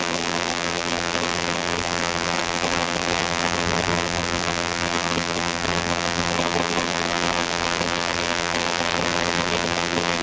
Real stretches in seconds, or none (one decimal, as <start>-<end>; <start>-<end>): none